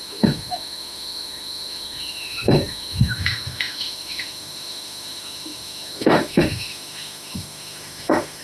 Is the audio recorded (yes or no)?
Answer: no